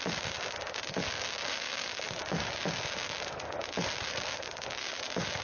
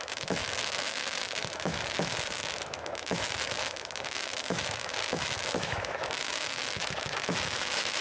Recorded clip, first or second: first